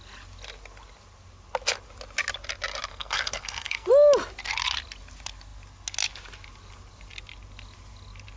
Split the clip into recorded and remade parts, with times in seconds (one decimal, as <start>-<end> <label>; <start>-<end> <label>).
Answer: 0.0-2.9 recorded; 2.9-3.9 remade; 3.9-8.4 recorded

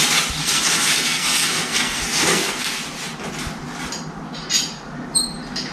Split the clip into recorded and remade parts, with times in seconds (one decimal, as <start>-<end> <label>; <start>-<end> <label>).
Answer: 0.0-0.4 recorded; 0.4-2.7 remade; 2.7-5.7 recorded